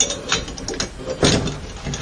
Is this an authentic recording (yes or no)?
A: yes